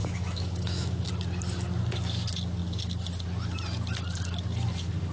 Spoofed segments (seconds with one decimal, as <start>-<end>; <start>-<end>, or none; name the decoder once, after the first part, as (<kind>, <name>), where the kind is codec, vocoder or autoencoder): 0.0-1.1 (autoencoder, DAC-VAE)